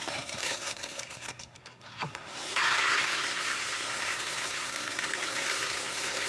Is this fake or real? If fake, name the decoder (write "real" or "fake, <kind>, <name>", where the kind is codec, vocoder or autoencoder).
fake, codec, SNAC